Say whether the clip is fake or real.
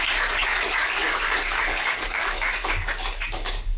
fake